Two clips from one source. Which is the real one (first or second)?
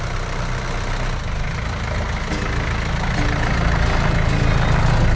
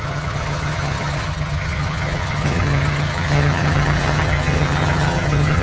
first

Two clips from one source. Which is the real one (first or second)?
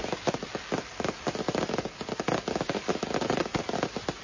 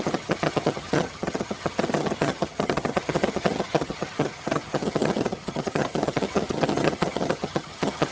first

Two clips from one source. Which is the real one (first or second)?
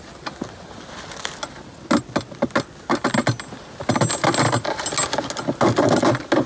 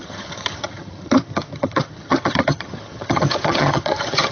first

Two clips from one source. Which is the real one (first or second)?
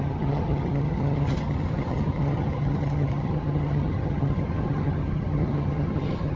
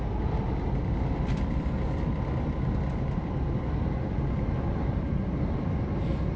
second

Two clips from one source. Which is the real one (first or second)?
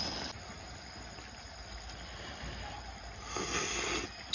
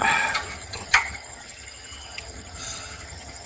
first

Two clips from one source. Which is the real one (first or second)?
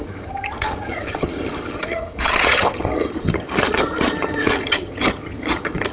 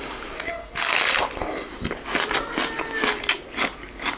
second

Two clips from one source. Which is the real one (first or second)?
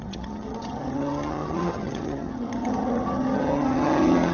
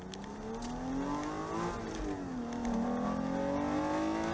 second